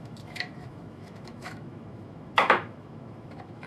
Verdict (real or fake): fake